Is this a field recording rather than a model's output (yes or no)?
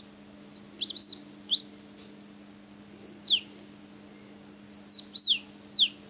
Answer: yes